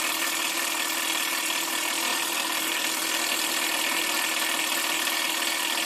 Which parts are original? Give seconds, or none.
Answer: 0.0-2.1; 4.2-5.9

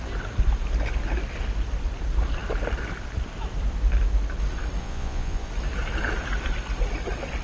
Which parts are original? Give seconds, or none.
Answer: 0.0-4.8; 5.5-7.4